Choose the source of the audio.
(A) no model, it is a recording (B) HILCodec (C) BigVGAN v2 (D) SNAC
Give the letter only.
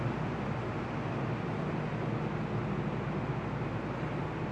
A